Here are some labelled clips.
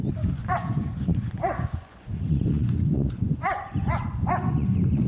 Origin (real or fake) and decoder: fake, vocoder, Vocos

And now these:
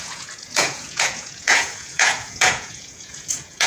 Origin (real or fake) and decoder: fake, vocoder, Vocos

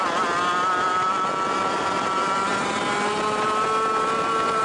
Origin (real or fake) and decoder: real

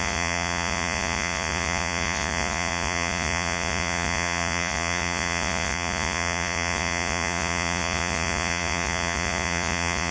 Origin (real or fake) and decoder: fake, vocoder, Vocos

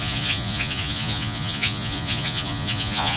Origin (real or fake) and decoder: fake, vocoder, Vocos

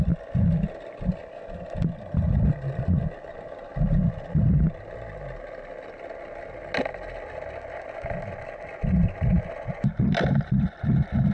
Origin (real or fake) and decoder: real